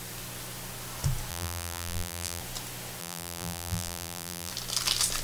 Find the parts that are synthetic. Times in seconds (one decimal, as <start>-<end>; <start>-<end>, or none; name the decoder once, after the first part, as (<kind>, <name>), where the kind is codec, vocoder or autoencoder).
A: 1.3-2.4 (vocoder, BigVGAN v2); 3.0-4.5